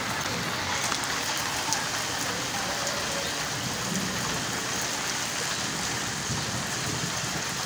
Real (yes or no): yes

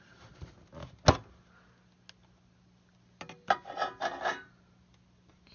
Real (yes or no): yes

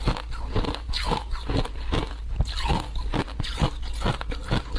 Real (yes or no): yes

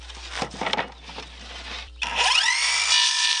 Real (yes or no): yes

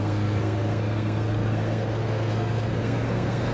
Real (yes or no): no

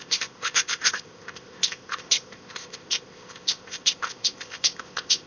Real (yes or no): no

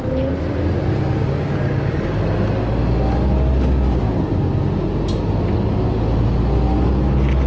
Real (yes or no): yes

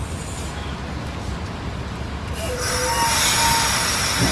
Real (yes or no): yes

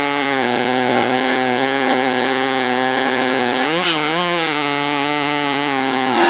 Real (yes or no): no